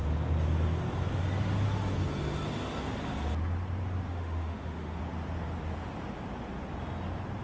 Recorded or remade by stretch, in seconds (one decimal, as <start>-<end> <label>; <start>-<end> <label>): 0.0-4.1 recorded; 4.1-5.0 remade; 5.0-7.4 recorded